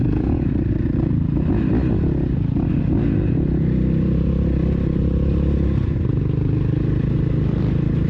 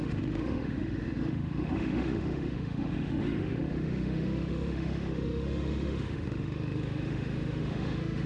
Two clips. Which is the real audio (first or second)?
first